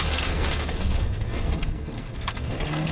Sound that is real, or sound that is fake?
fake